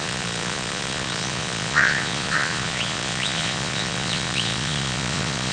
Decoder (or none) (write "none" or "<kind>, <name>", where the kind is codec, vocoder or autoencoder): vocoder, Vocos